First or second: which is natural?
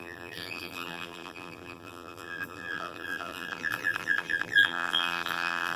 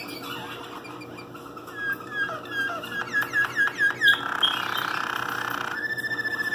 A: second